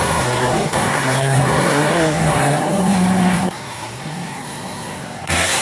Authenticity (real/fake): fake